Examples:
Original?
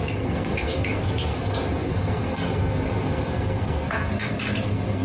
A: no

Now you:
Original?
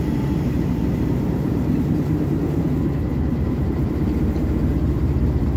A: no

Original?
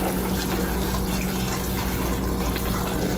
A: yes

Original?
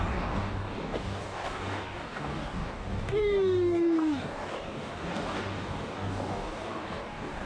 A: no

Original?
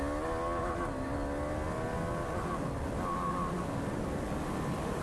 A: yes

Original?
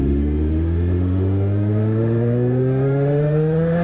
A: no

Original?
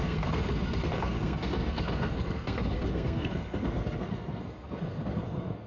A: no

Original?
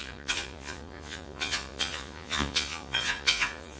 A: no